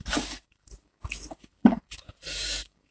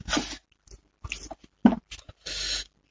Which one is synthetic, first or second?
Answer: first